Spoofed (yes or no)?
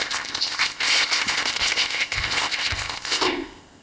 yes